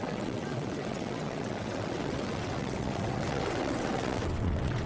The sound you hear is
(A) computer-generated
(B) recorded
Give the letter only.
A